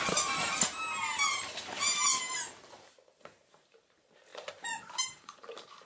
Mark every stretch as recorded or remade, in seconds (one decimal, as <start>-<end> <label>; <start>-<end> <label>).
0.0-2.1 remade; 2.1-3.2 recorded; 3.2-5.9 remade